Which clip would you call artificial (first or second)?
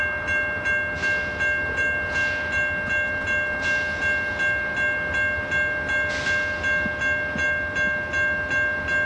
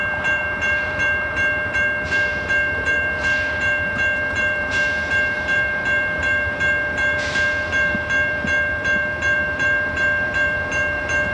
second